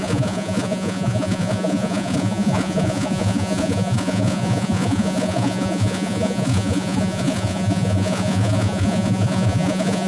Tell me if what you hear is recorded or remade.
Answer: remade